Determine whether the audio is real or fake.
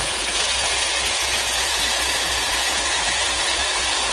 fake